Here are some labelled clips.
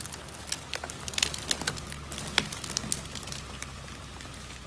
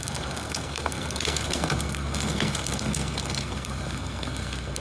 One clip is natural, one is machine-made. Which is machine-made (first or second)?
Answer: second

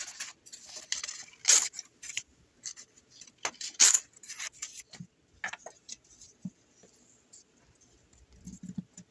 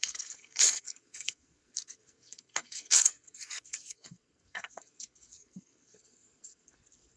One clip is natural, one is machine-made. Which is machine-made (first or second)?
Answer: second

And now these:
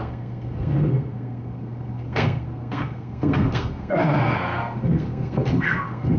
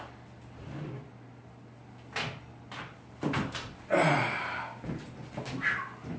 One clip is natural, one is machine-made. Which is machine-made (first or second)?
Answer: first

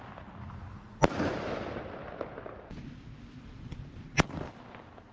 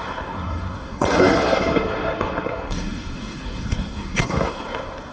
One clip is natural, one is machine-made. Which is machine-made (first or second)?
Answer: second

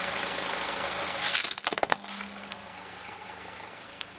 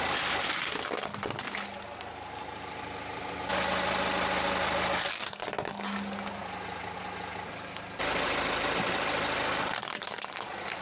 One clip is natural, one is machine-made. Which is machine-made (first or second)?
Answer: first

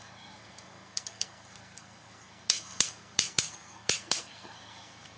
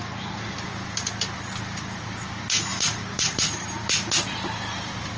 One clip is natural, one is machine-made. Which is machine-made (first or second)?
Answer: first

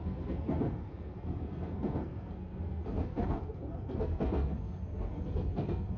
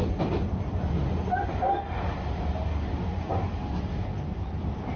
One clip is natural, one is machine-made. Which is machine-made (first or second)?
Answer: first